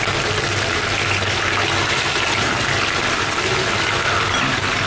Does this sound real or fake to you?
real